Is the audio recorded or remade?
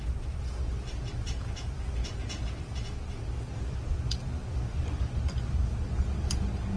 recorded